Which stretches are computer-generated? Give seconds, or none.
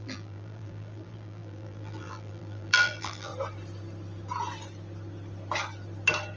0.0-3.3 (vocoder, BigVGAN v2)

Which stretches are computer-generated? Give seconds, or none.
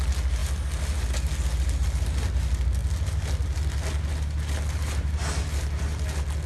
none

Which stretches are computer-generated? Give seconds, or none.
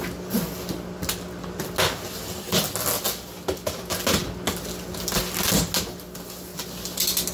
none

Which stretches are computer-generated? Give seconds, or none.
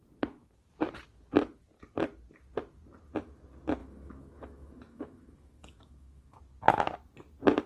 3.8-6.4 (autoencoder, DAC-VAE)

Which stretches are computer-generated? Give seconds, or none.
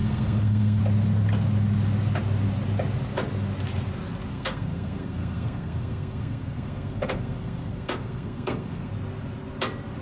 0.0-0.8 (codec, SNAC); 4.3-8.9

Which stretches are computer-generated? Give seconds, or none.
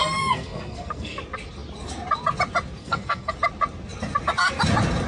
0.0-1.2 (codec, SNAC); 2.8-3.3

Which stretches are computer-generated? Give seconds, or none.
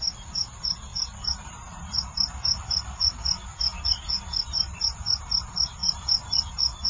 0.9-3.1 (vocoder, BigVGAN v2); 5.8-6.5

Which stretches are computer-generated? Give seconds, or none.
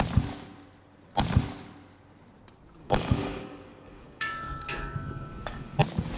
2.8-5.8 (codec, DAC)